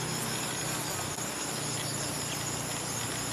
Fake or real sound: real